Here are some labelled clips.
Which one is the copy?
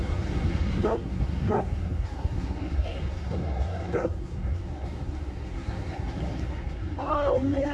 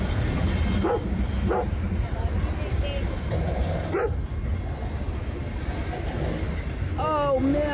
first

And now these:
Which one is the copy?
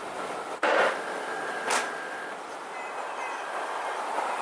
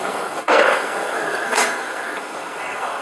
second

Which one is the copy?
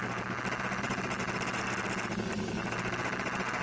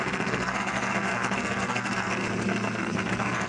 second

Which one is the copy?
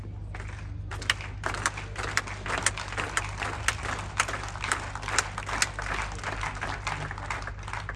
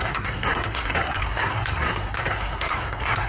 second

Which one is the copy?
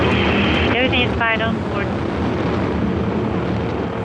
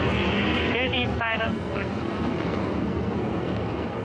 second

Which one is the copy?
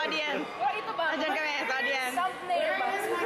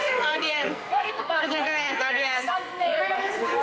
second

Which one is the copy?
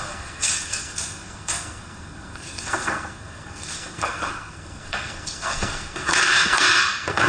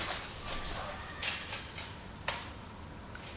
first